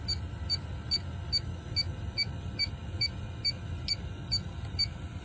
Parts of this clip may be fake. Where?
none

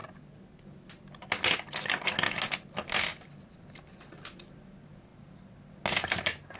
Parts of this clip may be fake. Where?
none

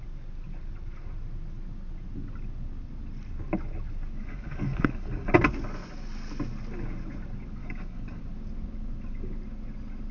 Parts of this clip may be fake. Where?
4.2-5.3 (codec, DAC); 7.6-8.2

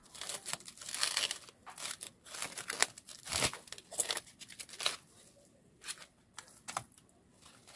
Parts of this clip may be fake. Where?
none

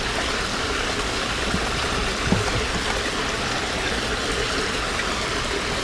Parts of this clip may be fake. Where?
0.5-1.5 (codec, DAC)

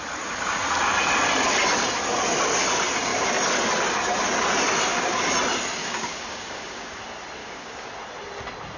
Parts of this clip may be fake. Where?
5.8-7.0 (codec, DAC); 7.4-7.9